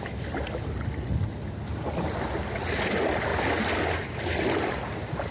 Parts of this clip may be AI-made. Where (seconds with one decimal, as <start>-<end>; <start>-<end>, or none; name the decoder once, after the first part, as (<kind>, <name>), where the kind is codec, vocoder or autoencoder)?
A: none